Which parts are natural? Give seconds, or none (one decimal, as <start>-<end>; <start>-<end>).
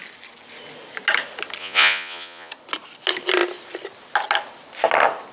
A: 0.0-1.6; 2.5-5.3